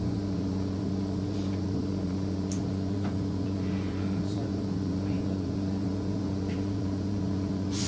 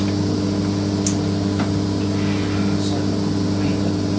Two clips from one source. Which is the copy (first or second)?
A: first